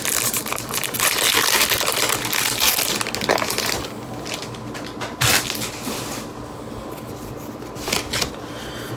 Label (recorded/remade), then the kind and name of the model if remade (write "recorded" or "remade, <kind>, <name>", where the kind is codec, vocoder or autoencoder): recorded